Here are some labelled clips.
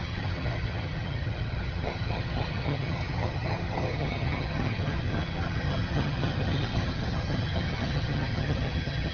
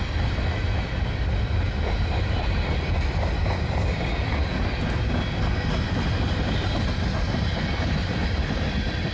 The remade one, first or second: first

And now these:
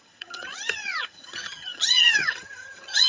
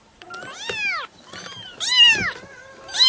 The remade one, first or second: first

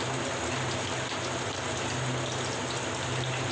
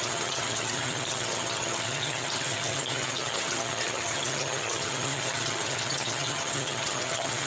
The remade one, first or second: second